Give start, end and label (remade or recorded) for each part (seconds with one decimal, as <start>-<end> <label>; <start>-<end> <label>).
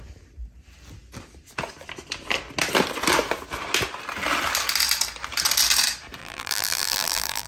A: 0.0-6.2 recorded; 6.2-7.5 remade